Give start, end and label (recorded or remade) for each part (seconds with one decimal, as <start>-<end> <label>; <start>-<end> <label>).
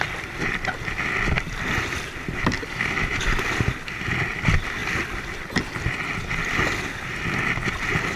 0.0-8.2 recorded